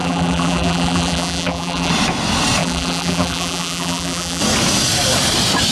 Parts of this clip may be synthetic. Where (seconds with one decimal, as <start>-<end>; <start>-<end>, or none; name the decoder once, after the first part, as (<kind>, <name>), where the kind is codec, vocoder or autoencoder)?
0.0-1.9 (vocoder, BigVGAN v2); 2.6-4.4